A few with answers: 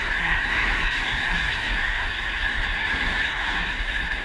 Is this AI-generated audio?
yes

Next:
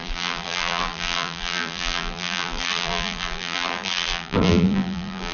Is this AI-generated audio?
yes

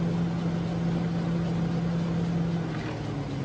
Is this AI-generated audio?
no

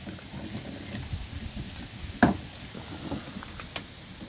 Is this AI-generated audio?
no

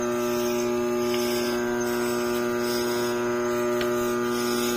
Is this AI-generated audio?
no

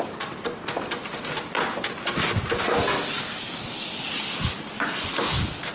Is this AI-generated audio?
no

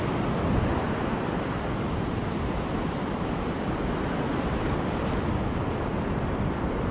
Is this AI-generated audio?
no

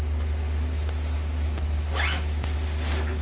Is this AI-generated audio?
no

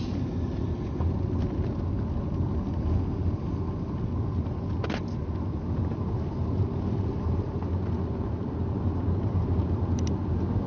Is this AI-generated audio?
no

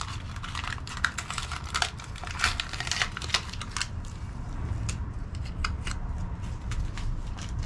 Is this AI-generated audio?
no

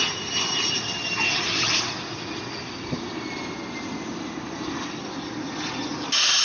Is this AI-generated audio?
no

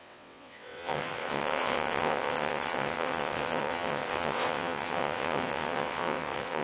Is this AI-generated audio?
yes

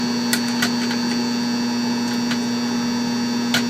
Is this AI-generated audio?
no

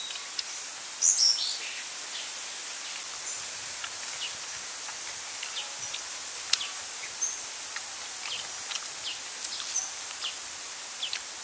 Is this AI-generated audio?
no